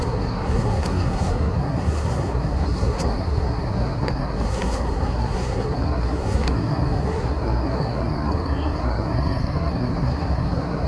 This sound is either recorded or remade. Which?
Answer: remade